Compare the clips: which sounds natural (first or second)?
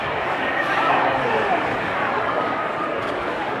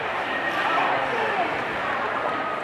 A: second